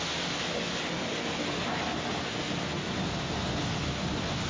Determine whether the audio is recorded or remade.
recorded